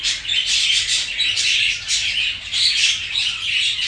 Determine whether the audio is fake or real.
fake